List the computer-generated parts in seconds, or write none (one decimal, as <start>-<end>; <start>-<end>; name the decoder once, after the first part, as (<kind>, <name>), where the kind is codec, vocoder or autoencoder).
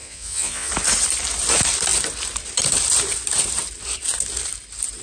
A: 0.0-0.7 (vocoder, Vocos)